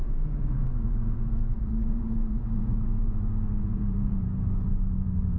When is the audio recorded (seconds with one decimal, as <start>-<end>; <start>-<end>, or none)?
none